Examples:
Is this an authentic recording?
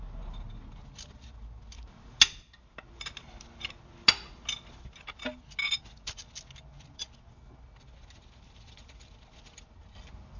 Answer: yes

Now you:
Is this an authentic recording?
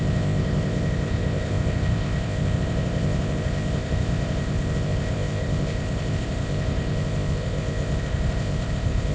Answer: no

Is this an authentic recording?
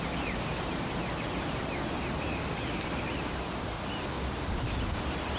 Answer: yes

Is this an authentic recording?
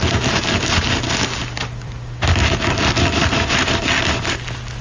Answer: yes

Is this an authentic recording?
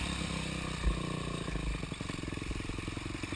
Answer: yes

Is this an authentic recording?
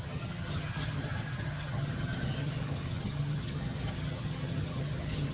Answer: no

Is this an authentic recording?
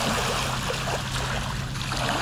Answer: yes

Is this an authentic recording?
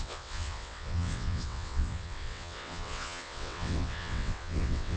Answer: no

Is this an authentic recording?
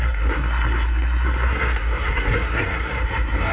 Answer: no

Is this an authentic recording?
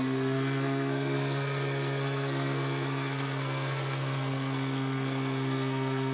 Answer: no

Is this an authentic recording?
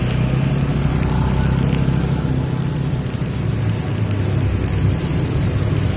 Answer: yes